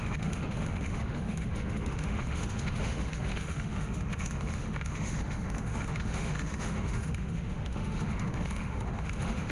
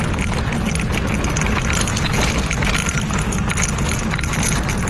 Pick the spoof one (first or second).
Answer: first